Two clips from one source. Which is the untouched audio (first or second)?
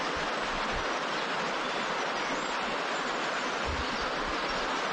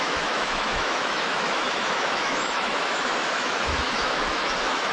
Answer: first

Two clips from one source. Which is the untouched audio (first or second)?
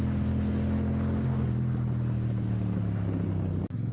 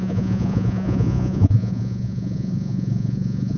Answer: first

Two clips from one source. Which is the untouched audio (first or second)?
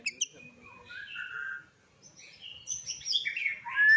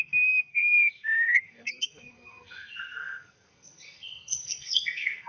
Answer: first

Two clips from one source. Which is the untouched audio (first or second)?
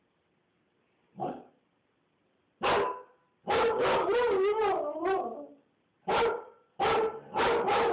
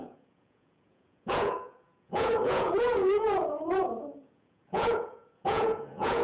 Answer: first